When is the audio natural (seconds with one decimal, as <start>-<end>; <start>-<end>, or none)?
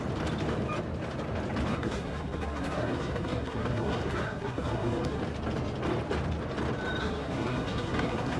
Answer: 0.0-1.7; 5.2-7.0